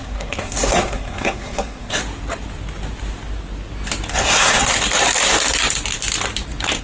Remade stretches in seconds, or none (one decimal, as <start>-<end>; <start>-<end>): 0.0-2.0; 4.1-4.7